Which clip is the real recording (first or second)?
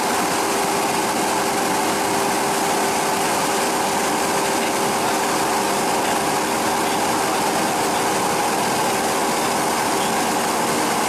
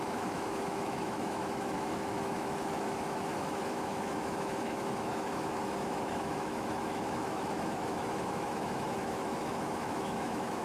first